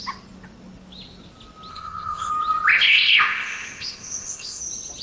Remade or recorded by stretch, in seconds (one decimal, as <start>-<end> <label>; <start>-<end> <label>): 0.0-1.7 recorded; 1.7-2.3 remade; 2.3-2.7 recorded; 2.7-4.6 remade; 4.6-5.0 recorded